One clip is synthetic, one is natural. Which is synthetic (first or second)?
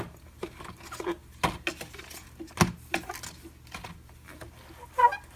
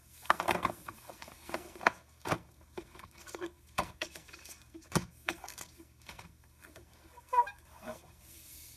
second